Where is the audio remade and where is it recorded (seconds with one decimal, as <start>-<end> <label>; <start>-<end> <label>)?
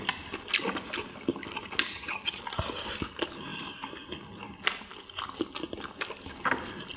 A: 0.0-1.9 recorded; 1.9-2.4 remade; 2.4-7.0 recorded